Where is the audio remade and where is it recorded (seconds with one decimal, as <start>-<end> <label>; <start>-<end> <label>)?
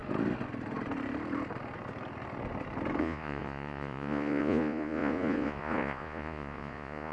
0.0-3.0 recorded; 3.0-7.1 remade